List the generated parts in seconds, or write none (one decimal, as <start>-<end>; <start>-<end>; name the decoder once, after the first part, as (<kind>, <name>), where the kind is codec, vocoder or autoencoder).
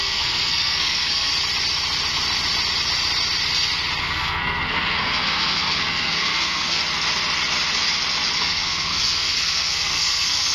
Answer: 0.0-1.3 (codec, SNAC); 4.0-6.8; 8.4-10.5